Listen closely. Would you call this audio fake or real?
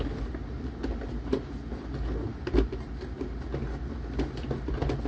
real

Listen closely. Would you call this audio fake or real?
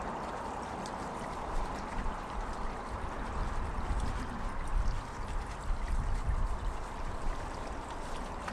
fake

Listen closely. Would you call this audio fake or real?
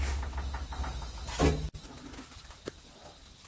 real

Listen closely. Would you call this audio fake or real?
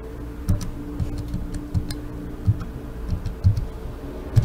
real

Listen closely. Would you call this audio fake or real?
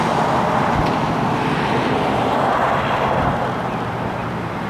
real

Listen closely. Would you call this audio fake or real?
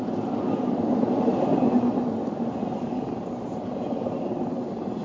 real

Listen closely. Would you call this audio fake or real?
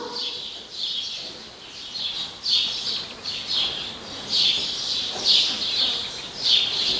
real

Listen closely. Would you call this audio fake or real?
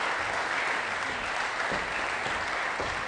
real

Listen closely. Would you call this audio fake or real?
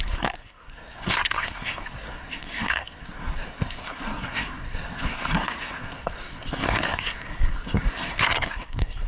fake